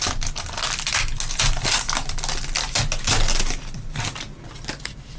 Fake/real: real